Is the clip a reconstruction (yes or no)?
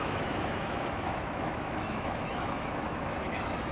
yes